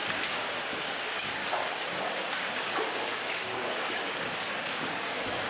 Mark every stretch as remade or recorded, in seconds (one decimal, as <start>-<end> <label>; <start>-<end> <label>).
0.0-0.8 recorded; 0.8-1.4 remade; 1.4-2.0 recorded; 2.0-5.5 remade